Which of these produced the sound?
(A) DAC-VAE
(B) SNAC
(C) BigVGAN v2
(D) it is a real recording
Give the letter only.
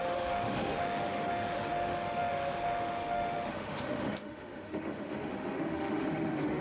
A